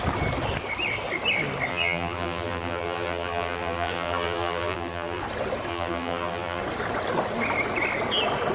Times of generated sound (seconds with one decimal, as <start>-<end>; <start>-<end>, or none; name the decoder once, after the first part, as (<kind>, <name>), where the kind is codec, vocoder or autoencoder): 1.7-5.2 (vocoder, BigVGAN v2); 5.7-6.6